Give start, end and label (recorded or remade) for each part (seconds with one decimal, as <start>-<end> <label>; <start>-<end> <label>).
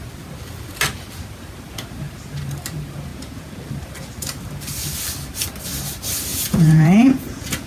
0.0-3.1 recorded; 3.1-3.6 remade; 3.6-6.3 recorded; 6.3-7.7 remade